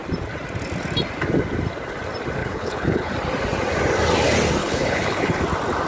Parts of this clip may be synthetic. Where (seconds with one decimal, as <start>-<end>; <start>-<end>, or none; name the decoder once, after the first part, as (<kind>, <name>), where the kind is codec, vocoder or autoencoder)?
2.4-3.1 (codec, HILCodec); 4.6-5.4